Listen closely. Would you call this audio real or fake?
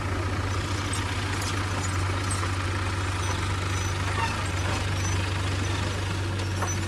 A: real